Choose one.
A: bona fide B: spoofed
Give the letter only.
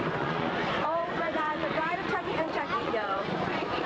B